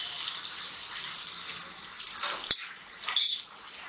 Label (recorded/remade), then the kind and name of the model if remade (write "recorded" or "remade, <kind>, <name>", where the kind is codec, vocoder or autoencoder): recorded